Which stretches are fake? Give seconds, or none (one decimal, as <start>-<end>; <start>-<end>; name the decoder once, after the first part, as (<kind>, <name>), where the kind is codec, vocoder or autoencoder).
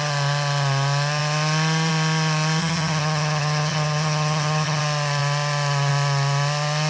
2.6-4.8 (vocoder, HiFi-GAN)